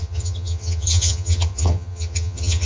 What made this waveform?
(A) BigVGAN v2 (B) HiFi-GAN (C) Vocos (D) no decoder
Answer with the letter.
B